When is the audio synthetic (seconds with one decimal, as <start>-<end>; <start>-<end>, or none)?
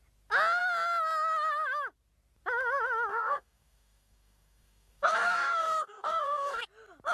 3.1-6.6